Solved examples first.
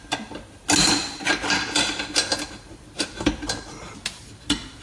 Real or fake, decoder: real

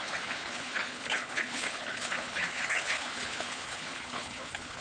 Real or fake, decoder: fake, codec, HILCodec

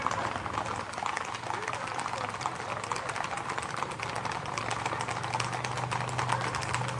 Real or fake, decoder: real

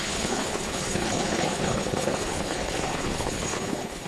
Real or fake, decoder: fake, codec, HILCodec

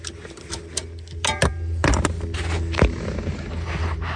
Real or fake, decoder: real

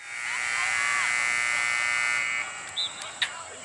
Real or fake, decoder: real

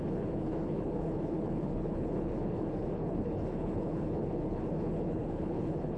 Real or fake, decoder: fake, codec, HILCodec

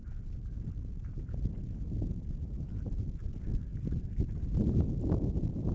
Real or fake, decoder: real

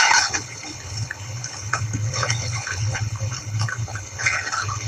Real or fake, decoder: fake, codec, HILCodec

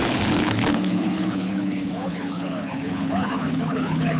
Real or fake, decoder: fake, codec, HILCodec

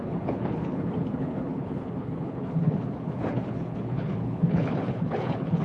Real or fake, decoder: fake, codec, HILCodec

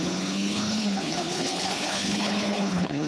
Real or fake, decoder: fake, codec, HILCodec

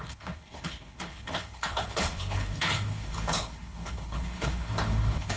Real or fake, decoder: fake, codec, HILCodec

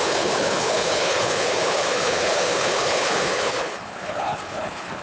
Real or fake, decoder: fake, codec, HILCodec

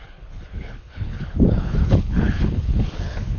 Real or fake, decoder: fake, codec, HILCodec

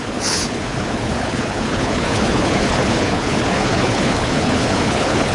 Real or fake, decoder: fake, codec, HILCodec